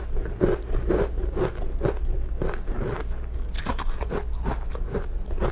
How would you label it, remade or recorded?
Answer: recorded